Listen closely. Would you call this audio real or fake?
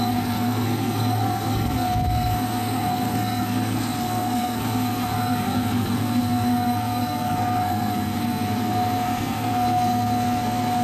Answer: fake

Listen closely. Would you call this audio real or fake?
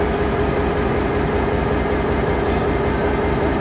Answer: real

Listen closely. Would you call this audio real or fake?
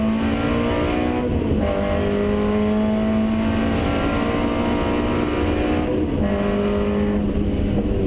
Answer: real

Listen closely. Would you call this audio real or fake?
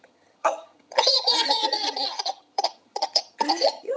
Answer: fake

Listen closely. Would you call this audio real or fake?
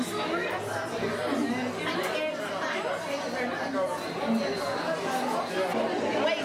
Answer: real